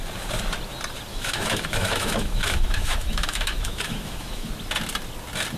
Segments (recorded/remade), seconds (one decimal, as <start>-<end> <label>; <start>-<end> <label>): 0.0-1.1 recorded; 1.1-4.5 remade; 4.5-5.6 recorded